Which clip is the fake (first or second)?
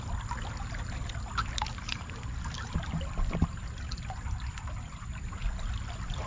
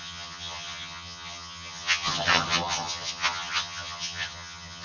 second